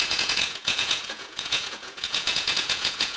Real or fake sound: fake